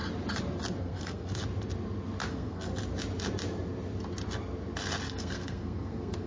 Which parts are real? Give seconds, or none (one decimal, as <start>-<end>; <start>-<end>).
0.0-0.8; 1.3-2.3; 2.7-5.1